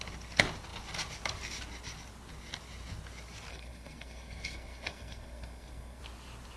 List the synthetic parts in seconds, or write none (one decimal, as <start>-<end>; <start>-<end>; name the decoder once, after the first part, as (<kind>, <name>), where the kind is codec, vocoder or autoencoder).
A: 3.5-6.0 (codec, SNAC)